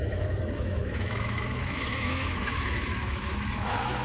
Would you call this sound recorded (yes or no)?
no